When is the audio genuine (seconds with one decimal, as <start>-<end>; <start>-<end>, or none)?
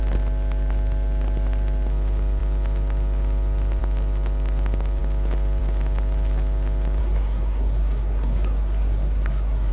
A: 0.0-7.0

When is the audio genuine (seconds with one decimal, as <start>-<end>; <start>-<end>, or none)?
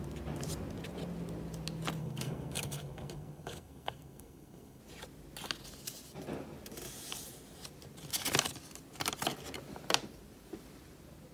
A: 0.0-2.0; 4.8-11.3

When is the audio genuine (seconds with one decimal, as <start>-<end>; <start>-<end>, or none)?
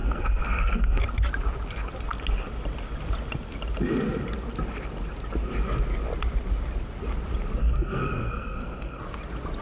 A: 1.0-7.6; 9.0-9.6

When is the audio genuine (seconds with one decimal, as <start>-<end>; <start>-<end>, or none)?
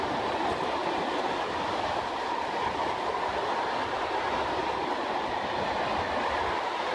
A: 0.0-6.9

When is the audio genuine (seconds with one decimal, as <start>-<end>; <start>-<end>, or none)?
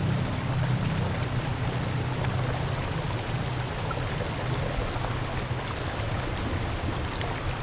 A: 0.0-7.6